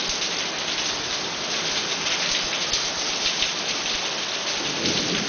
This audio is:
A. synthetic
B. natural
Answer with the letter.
B